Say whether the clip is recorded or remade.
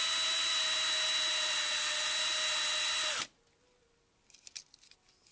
recorded